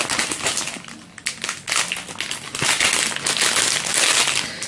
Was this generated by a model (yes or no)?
no